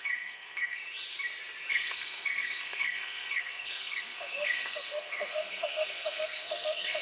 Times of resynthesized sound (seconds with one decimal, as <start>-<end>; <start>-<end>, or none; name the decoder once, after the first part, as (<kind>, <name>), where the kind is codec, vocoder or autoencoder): 0.0-0.8 (codec, SNAC); 1.7-7.0